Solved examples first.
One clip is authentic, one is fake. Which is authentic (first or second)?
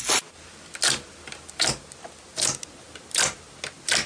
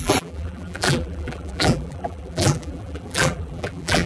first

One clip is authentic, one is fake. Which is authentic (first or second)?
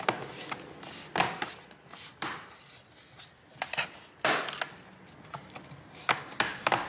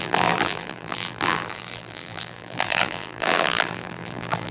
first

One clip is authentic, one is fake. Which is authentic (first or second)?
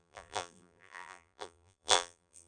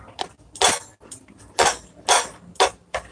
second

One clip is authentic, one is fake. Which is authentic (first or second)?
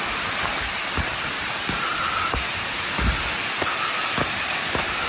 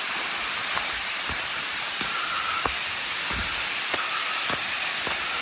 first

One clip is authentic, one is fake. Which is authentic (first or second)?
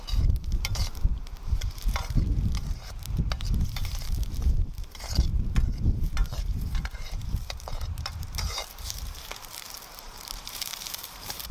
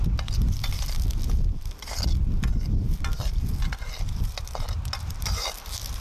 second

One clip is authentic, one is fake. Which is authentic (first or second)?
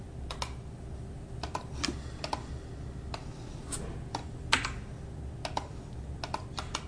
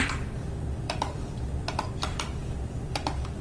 first